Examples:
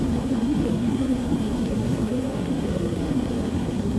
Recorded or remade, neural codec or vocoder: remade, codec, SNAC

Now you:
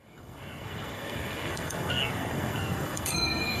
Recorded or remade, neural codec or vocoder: remade, codec, SNAC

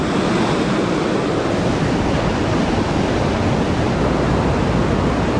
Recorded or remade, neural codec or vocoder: recorded